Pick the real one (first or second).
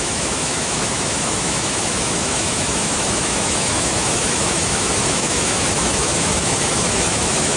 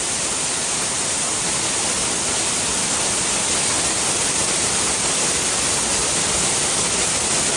second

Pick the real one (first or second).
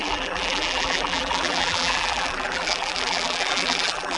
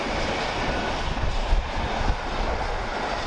second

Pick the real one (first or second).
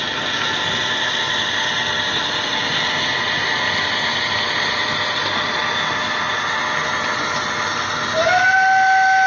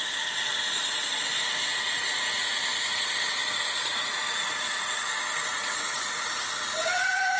first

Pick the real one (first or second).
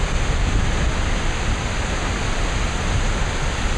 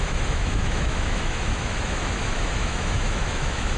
first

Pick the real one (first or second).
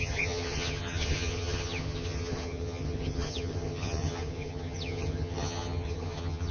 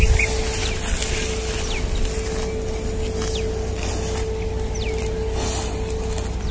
second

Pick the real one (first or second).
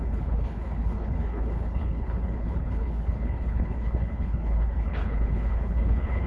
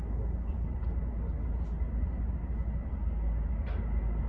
second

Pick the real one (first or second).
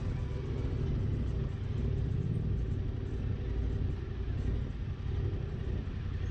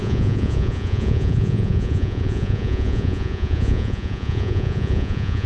first